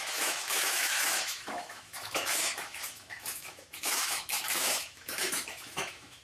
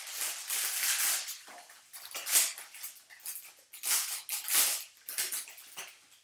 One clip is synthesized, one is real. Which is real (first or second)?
second